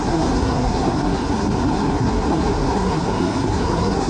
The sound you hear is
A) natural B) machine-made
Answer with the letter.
B